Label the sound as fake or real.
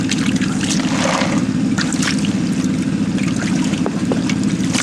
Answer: real